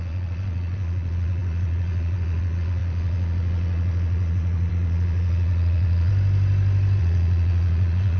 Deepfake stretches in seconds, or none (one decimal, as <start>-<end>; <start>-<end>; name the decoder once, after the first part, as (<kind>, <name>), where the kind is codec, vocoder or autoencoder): 0.0-6.1 (vocoder, Vocos); 7.0-8.2